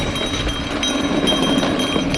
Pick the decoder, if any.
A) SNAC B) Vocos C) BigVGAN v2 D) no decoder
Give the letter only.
D